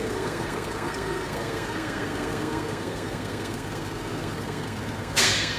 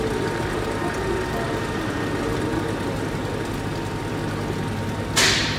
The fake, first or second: first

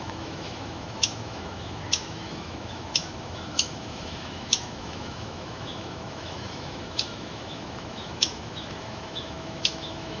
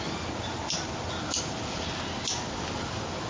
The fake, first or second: first